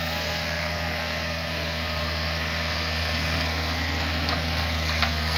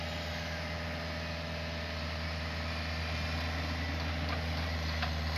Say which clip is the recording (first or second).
second